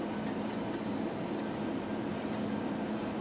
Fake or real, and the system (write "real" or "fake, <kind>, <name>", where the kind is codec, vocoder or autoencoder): real